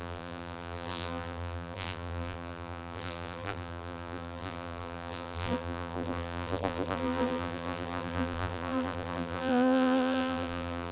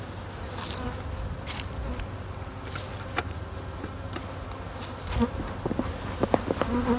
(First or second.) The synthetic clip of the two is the first